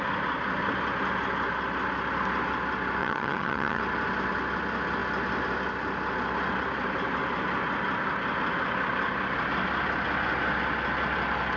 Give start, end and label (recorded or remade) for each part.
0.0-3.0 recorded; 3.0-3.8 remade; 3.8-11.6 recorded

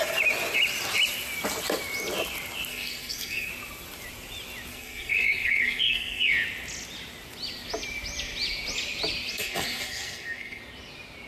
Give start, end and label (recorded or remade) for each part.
0.0-2.7 recorded; 2.7-3.5 remade; 3.5-4.7 recorded; 4.7-6.3 remade; 6.3-9.3 recorded; 9.3-10.6 remade; 10.6-11.3 recorded

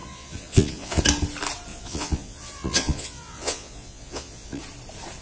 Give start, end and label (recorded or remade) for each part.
0.0-1.0 remade; 1.0-1.7 recorded; 1.7-4.6 remade; 4.6-5.2 recorded

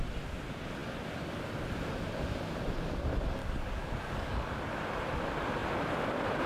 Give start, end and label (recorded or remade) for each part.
0.0-3.4 recorded; 3.4-4.5 remade; 4.5-6.5 recorded

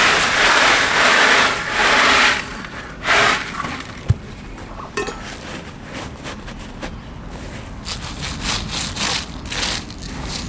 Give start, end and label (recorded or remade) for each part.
0.0-2.5 recorded; 2.5-5.8 remade; 5.8-10.5 recorded

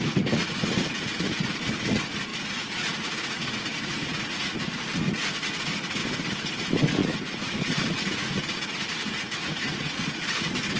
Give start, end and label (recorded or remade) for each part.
0.0-6.0 remade; 6.0-6.5 recorded; 6.5-10.8 remade